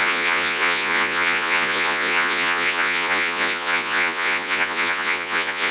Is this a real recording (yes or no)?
no